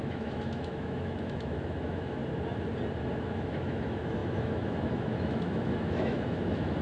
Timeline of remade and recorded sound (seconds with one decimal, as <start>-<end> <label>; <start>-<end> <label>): 0.0-2.2 remade; 2.2-3.0 recorded; 3.0-6.8 remade